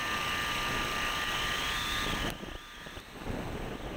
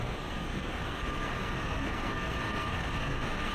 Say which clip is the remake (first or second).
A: second